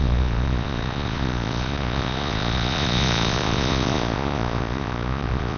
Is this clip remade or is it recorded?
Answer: remade